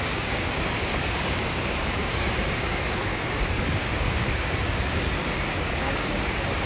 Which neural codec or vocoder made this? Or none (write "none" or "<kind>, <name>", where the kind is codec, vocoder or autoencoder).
codec, DAC